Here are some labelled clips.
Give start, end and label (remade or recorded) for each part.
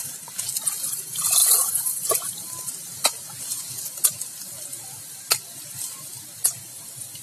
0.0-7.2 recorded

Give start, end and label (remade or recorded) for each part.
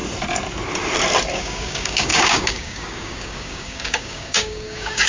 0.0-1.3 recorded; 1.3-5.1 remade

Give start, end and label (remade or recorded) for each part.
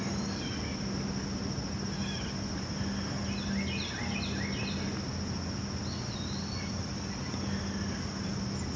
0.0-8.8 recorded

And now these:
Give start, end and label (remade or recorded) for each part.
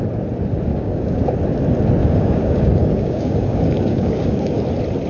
0.0-0.7 recorded; 0.7-1.2 remade; 1.2-2.0 recorded; 2.0-4.6 remade; 4.6-5.1 recorded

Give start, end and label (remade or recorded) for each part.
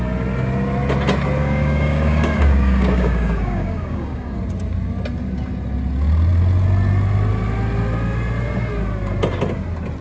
0.0-1.4 recorded; 1.4-4.4 remade; 4.4-10.0 recorded